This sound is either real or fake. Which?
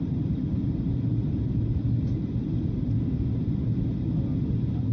real